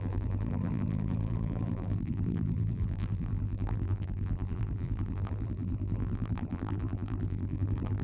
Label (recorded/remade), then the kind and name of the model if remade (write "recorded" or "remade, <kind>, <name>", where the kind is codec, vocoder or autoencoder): remade, vocoder, BigVGAN v2